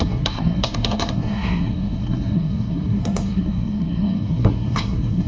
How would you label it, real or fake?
fake